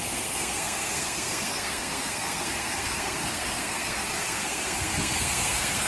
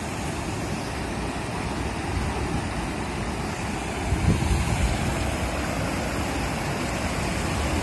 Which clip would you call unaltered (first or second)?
second